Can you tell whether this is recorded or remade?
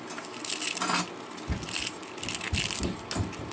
recorded